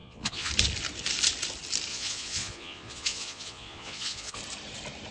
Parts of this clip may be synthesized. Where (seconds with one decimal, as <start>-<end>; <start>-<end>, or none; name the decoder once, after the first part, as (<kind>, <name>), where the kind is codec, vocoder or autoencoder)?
0.0-0.5 (vocoder, Vocos); 1.9-4.4

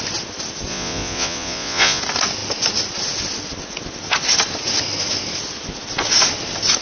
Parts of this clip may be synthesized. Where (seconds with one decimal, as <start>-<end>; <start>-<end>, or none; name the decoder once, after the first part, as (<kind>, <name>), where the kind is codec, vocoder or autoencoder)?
0.7-2.0 (vocoder, Vocos)